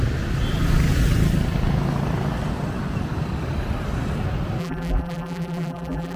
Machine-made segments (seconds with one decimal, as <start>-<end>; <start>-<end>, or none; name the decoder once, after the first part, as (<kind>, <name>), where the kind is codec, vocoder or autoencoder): 4.6-6.2 (vocoder, BigVGAN v2)

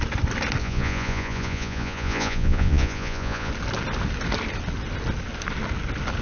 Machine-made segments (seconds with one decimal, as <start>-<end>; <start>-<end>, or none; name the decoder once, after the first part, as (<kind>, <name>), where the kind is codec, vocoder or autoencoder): 0.6-3.5 (vocoder, Vocos)